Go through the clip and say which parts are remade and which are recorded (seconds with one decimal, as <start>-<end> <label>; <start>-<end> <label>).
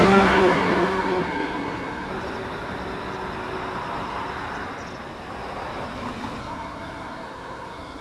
0.0-2.1 remade; 2.1-6.4 recorded; 6.4-8.0 remade